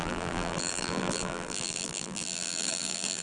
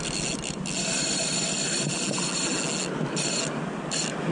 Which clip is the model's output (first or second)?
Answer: first